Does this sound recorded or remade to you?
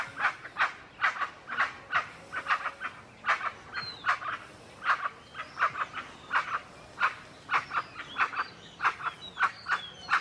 recorded